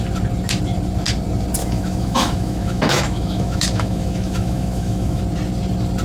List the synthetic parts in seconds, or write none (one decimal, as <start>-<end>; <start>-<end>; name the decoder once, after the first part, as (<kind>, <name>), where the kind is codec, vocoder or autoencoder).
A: 1.6-5.2 (autoencoder, DAC-VAE)